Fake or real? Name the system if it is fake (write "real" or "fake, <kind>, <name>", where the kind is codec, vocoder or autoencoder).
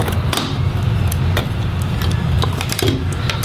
real